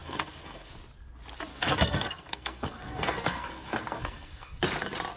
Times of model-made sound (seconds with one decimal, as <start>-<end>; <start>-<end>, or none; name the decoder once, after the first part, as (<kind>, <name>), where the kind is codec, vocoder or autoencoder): 0.0-0.7 (codec, SNAC); 1.5-4.6